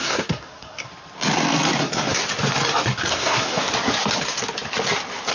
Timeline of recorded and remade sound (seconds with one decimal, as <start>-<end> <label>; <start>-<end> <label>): 0.0-0.9 remade; 0.9-1.8 recorded; 1.8-2.2 remade; 2.2-3.1 recorded; 3.1-3.6 remade; 3.6-5.3 recorded